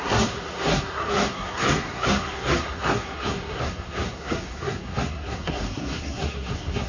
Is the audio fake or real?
fake